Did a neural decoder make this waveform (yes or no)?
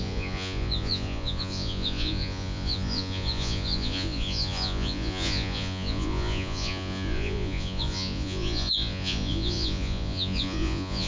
yes